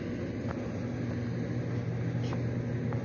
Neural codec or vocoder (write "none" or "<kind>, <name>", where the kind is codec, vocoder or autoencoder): none